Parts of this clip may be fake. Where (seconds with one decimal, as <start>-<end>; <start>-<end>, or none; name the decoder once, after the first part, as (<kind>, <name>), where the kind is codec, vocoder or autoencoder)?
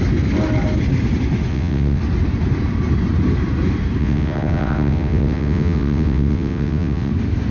1.5-2.0 (vocoder, WaveNeXt); 4.0-7.1